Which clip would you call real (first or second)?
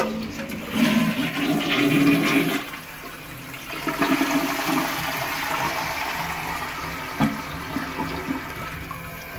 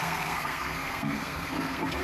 first